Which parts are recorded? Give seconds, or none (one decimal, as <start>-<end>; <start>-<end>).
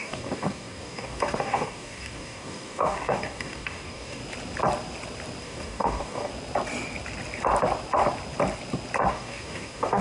4.2-5.4; 6.3-9.1